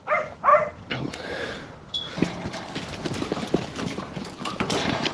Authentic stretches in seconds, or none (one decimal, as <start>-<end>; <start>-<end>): 0.0-5.1